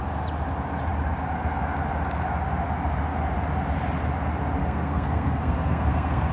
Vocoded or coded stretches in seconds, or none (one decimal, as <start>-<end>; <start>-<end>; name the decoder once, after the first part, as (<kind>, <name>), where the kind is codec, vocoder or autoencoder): 4.6-6.3 (codec, SNAC)